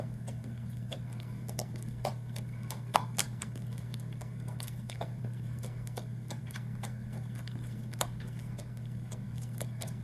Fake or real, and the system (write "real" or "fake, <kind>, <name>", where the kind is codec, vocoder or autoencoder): fake, codec, SNAC